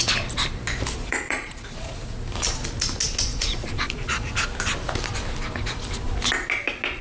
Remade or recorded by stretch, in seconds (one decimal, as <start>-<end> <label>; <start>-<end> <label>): 0.0-1.0 recorded; 1.0-2.1 remade; 2.1-3.3 recorded; 3.3-4.3 remade; 4.3-7.0 recorded